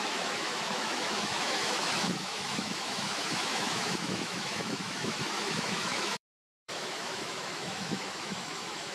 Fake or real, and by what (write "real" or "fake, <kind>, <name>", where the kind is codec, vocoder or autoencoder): fake, autoencoder, DAC-VAE